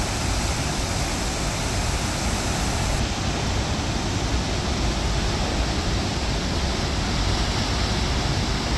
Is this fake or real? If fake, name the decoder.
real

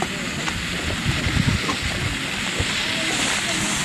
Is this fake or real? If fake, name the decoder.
real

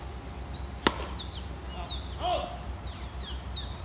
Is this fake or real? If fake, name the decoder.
real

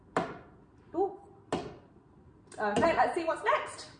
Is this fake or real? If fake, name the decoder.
real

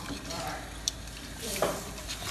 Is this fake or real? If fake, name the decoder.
fake, vocoder, BigVGAN v2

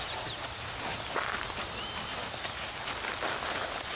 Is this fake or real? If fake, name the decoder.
real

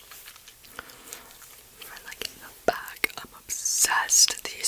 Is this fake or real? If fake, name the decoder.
real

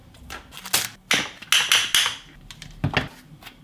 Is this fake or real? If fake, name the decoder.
real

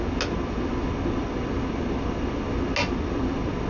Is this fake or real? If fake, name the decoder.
real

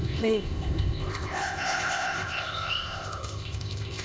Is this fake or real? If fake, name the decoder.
fake, codec, ZipCodec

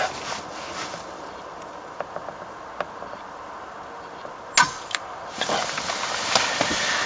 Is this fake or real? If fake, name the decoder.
real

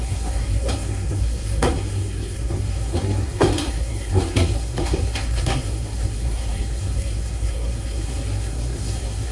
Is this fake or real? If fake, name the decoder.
fake, codec, SNAC